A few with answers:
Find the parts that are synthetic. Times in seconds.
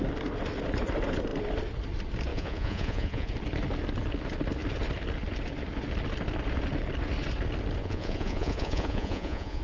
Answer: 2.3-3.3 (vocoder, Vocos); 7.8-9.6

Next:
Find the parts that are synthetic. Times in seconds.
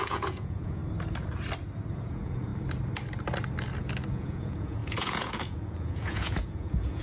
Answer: 0.0-0.8 (vocoder, Vocos); 1.9-2.5; 4.1-7.0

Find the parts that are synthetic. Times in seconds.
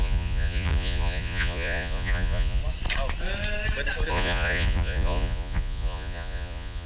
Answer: 0.0-2.6 (vocoder, Vocos); 4.1-6.9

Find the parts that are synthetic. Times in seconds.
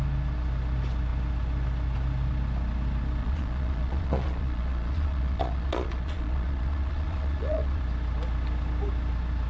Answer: 3.2-7.8 (vocoder, Vocos)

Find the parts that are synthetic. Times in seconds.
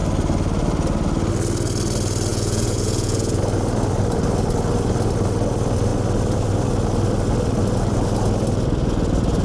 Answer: 2.3-3.4 (vocoder, Vocos)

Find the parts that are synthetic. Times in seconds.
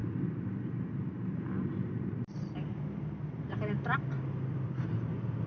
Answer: none